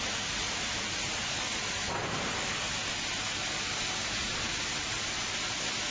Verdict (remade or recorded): recorded